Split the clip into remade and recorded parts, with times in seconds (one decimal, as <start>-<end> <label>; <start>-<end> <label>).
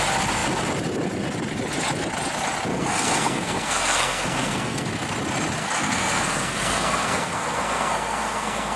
0.0-2.7 recorded; 2.7-4.9 remade; 4.9-5.6 recorded; 5.6-8.8 remade